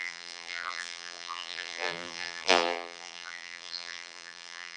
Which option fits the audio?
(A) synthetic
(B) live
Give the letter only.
A